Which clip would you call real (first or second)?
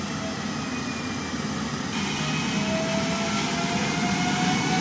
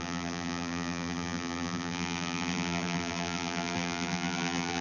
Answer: first